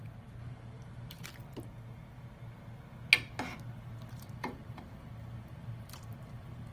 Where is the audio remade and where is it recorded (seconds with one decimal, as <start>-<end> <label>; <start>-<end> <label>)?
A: 0.0-1.4 remade; 1.4-4.1 recorded; 4.1-6.7 remade